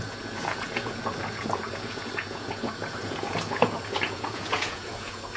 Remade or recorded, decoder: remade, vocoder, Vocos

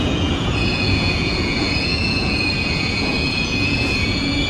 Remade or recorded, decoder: remade, vocoder, Vocos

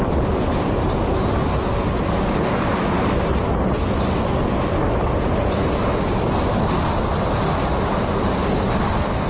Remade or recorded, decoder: recorded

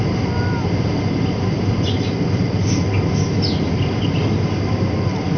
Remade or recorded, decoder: recorded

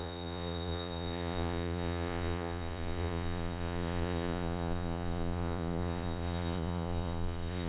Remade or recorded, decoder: remade, vocoder, Vocos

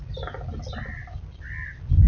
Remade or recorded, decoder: recorded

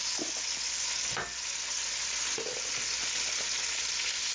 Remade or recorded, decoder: recorded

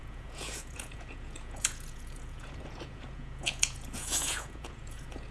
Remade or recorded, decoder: remade, vocoder, Vocos